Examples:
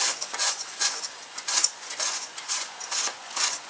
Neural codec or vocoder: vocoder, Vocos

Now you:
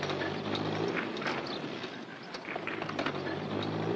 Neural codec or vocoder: none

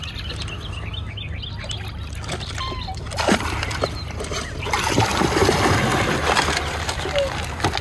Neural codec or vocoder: none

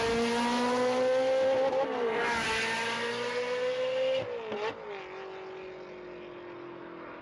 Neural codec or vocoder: none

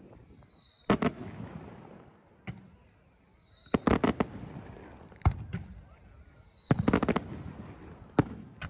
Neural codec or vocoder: none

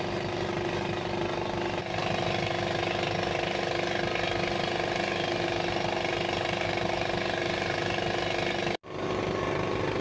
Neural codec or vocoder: none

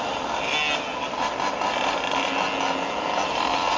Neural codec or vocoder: none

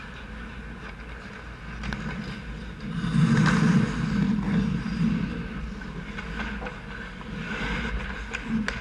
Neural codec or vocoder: none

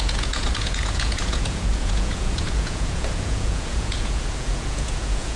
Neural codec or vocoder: vocoder, Vocos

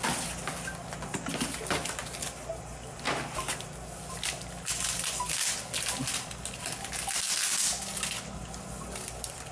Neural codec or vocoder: none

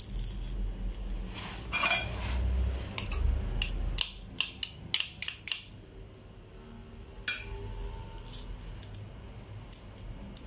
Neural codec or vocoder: none